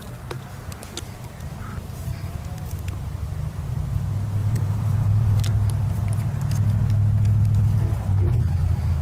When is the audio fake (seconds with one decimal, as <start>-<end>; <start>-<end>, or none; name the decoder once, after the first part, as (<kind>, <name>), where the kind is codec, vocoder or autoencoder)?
2.0-2.7 (vocoder, BigVGAN v2); 4.4-5.4